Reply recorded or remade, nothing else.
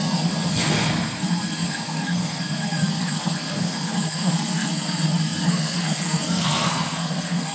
remade